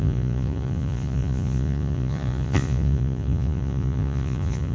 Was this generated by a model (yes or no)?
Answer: yes